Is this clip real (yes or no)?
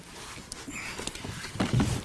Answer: yes